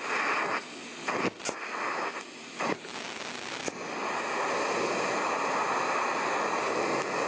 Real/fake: real